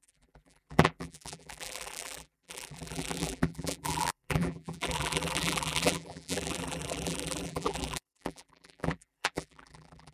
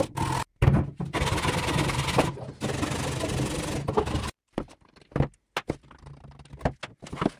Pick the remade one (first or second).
first